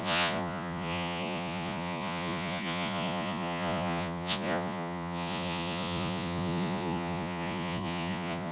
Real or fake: fake